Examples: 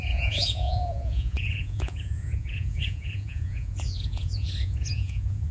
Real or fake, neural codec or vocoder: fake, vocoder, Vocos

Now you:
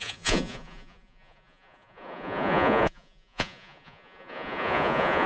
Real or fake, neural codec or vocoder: fake, vocoder, Vocos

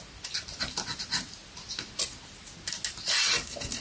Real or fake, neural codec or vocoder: real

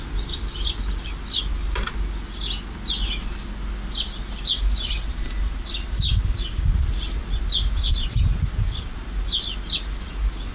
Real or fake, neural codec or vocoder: real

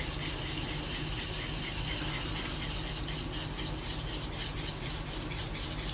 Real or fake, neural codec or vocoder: real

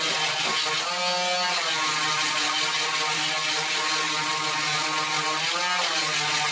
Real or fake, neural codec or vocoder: real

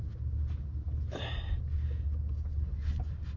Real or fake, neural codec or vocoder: real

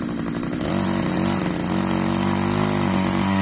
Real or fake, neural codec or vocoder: real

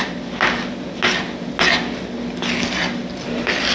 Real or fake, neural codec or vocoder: real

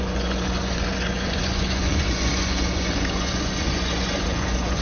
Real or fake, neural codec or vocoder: fake, vocoder, Vocos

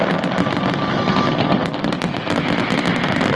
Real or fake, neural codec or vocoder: real